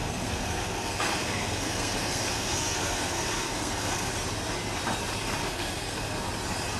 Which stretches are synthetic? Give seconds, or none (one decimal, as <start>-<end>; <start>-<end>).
0.0-4.1; 5.4-6.3

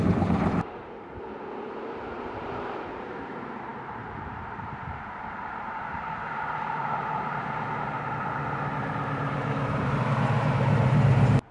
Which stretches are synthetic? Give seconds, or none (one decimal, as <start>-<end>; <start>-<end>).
0.0-11.5

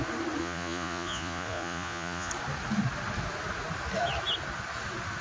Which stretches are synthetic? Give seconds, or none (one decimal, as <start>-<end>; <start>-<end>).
0.4-2.3

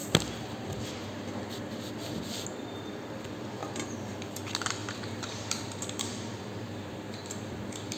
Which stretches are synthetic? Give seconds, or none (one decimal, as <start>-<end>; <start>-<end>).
4.8-7.5

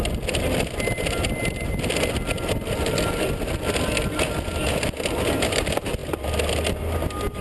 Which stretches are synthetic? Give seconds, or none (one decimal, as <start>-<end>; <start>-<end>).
none